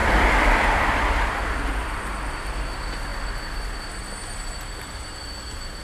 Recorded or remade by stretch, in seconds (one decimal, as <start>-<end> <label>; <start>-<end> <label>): 0.0-2.0 remade; 2.0-5.8 recorded

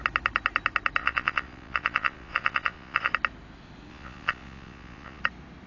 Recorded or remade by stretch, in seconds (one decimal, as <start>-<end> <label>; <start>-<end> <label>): 0.0-1.0 recorded; 1.0-3.1 remade; 3.1-3.9 recorded; 3.9-5.2 remade; 5.2-5.7 recorded

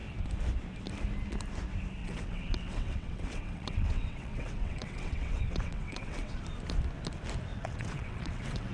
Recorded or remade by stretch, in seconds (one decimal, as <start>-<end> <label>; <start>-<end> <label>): 0.0-2.0 recorded; 2.0-6.4 remade; 6.4-7.5 recorded; 7.5-8.7 remade

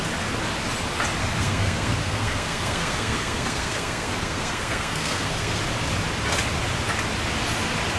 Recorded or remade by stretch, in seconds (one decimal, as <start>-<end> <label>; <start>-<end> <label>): 0.0-1.2 recorded; 1.2-5.6 remade; 5.6-8.0 recorded

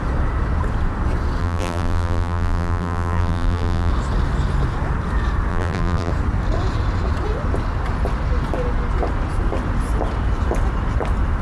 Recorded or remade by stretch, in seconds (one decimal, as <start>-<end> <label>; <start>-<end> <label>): 0.0-1.4 recorded; 1.4-3.9 remade; 3.9-5.5 recorded; 5.5-6.1 remade; 6.1-11.4 recorded

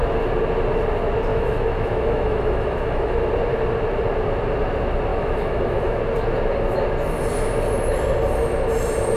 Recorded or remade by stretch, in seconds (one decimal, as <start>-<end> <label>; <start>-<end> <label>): 0.0-1.3 recorded; 1.3-3.3 remade; 3.3-5.1 recorded; 5.1-6.0 remade; 6.0-9.2 recorded